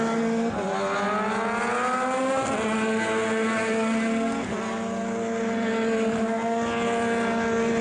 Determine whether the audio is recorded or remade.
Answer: recorded